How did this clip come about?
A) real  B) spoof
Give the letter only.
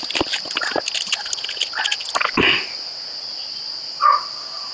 A